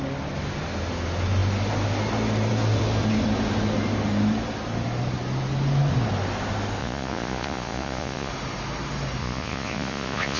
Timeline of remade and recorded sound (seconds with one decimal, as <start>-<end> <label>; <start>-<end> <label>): 0.0-6.8 recorded; 6.8-8.3 remade; 8.3-9.2 recorded; 9.2-10.4 remade